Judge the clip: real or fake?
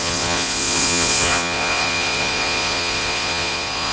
fake